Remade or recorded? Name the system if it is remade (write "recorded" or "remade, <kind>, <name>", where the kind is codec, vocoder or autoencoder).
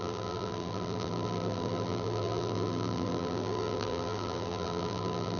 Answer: remade, vocoder, BigVGAN v2